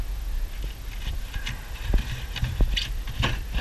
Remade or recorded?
recorded